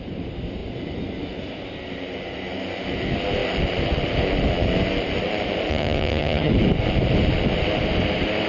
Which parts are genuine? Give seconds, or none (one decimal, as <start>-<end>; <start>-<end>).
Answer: 0.0-5.7; 6.5-8.5